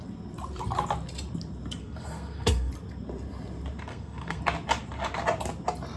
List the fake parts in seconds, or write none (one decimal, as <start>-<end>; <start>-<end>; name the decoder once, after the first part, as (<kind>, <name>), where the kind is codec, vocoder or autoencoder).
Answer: 1.8-2.7 (codec, SNAC); 3.9-4.4